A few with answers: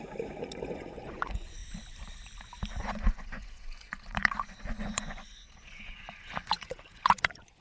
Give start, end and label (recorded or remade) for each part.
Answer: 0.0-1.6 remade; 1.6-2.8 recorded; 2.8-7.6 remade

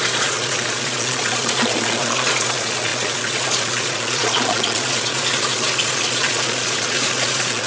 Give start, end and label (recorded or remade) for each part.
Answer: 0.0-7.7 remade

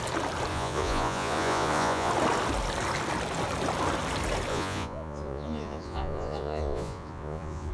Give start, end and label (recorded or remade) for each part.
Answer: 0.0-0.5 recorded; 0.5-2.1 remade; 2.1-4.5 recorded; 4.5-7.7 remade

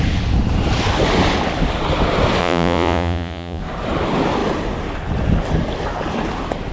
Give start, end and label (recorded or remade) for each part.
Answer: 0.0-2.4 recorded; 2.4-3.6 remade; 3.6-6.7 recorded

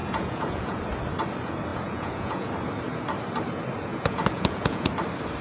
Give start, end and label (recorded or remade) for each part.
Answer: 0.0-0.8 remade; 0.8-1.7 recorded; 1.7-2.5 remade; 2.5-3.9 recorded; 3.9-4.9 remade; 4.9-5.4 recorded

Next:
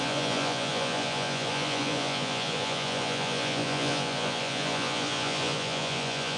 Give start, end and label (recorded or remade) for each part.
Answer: 0.0-6.4 remade

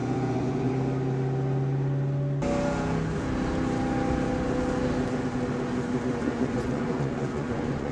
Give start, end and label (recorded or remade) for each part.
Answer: 0.0-0.7 remade; 0.7-6.2 recorded; 6.2-7.9 remade

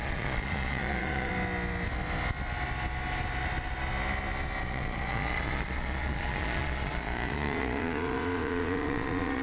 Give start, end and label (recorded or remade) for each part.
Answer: 0.0-1.3 remade; 1.3-4.6 recorded; 4.6-9.4 remade